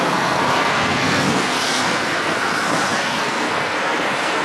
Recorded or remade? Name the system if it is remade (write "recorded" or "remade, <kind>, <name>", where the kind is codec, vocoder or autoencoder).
remade, codec, SNAC